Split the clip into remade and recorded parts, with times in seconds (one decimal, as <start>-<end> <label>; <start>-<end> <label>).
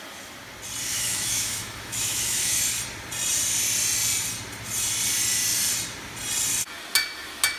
0.0-0.9 recorded; 0.9-2.6 remade; 2.6-7.6 recorded